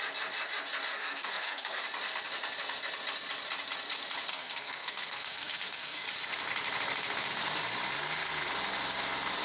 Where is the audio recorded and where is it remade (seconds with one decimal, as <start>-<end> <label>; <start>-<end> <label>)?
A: 0.0-0.9 recorded; 0.9-1.8 remade; 1.8-4.3 recorded; 4.3-6.1 remade; 6.1-9.4 recorded